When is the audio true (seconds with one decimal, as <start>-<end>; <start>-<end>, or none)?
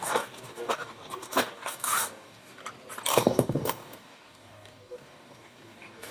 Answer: 2.6-3.1